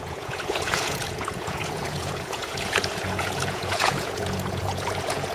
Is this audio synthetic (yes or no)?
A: yes